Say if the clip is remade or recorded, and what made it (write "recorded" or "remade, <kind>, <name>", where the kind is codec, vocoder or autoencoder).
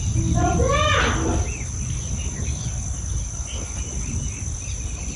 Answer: recorded